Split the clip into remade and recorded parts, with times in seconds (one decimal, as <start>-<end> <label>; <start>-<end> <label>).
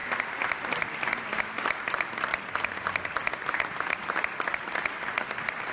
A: 0.0-5.7 recorded